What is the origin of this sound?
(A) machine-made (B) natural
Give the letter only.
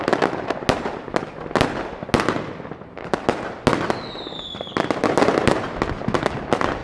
B